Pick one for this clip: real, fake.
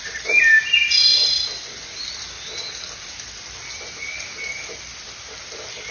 real